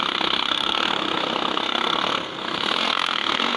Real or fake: fake